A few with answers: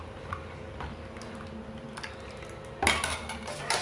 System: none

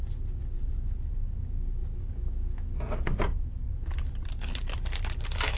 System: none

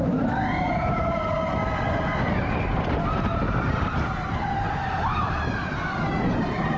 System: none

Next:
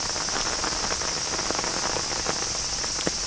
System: none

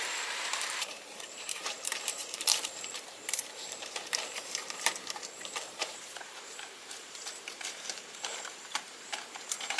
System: vocoder, BigVGAN v2